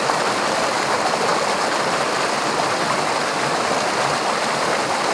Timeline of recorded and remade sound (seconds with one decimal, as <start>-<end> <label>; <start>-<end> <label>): 0.0-5.1 recorded